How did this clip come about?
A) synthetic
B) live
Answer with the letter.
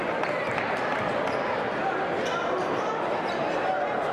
B